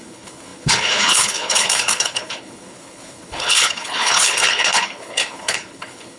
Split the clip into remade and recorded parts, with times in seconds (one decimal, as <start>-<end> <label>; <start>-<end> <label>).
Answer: 0.0-6.2 remade